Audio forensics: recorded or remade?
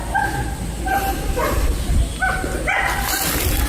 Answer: recorded